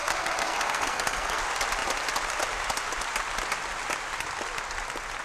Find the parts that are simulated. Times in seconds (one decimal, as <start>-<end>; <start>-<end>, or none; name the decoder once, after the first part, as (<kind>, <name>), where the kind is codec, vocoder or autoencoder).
0.0-1.4 (codec, SNAC)